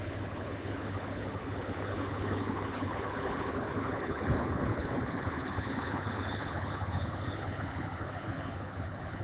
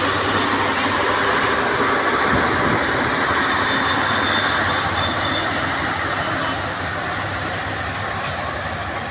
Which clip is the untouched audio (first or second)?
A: second